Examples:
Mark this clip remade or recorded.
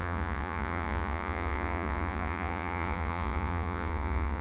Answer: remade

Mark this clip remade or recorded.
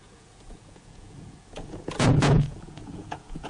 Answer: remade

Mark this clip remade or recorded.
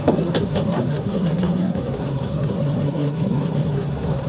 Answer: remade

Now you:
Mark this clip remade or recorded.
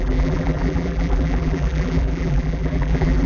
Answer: remade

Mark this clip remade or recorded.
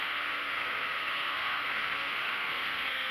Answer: remade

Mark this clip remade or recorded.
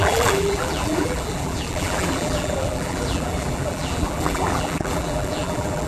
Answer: remade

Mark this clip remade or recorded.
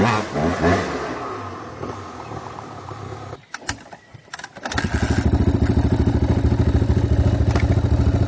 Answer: recorded